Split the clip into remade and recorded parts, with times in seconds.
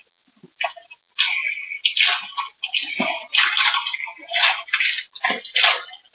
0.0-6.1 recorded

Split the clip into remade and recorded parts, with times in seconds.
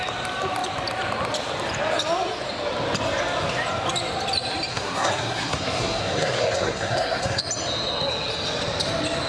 0.0-4.7 recorded; 4.7-7.4 remade; 7.4-9.3 recorded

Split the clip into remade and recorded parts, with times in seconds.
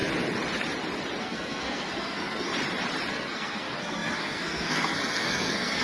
0.0-1.2 recorded; 1.2-2.5 remade; 2.5-3.1 recorded; 3.1-5.8 remade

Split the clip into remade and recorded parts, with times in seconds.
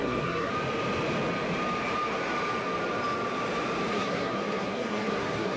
0.0-0.5 remade; 0.5-3.9 recorded; 3.9-5.6 remade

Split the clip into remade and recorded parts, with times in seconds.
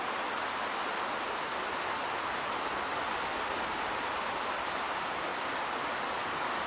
0.0-6.7 recorded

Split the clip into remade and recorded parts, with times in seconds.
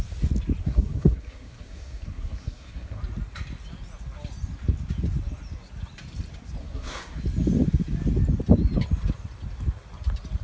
0.0-0.6 recorded; 0.6-3.0 remade; 3.0-6.6 recorded; 6.6-7.2 remade; 7.2-10.4 recorded